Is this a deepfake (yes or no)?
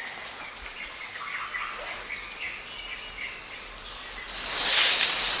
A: no